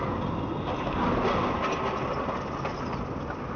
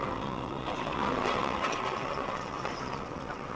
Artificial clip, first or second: second